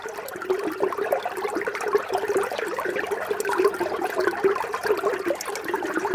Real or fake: real